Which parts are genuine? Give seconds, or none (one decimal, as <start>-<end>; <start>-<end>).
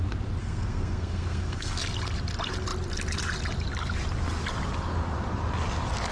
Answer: 0.0-0.4; 1.8-6.1